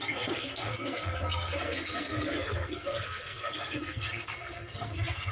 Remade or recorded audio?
remade